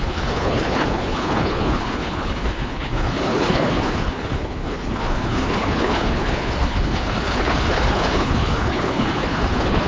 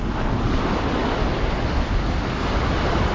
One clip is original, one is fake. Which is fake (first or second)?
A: first